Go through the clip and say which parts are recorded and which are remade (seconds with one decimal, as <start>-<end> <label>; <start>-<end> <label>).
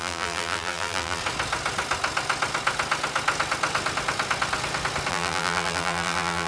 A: 0.0-1.2 remade; 1.2-5.1 recorded; 5.1-6.5 remade